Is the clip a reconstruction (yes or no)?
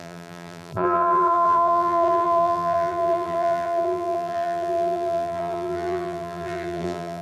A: yes